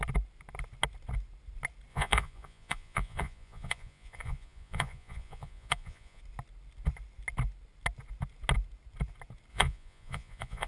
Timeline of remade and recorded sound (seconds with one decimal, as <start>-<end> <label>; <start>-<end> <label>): 0.0-1.9 recorded; 1.9-6.2 remade; 6.2-9.5 recorded; 9.5-10.7 remade